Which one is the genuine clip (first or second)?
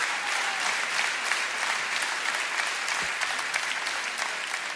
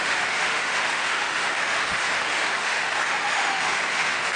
first